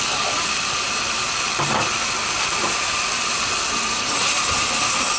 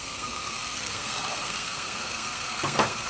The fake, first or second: second